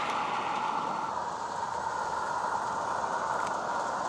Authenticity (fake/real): real